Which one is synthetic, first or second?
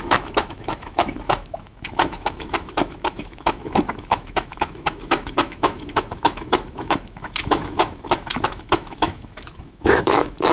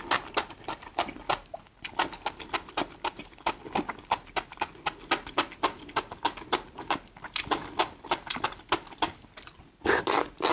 first